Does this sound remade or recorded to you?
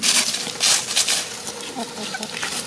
recorded